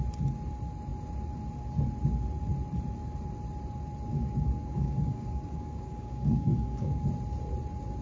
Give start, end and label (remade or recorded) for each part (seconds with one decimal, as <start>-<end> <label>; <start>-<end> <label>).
0.0-4.1 recorded; 4.1-7.1 remade; 7.1-8.0 recorded